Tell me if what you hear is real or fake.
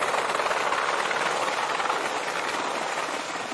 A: real